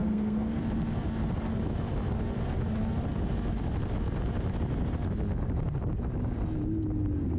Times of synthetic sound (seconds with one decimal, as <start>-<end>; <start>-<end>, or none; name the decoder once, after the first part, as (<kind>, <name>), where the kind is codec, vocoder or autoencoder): 0.0-0.6 (codec, SNAC)